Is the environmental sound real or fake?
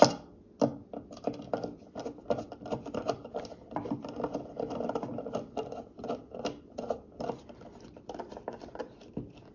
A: real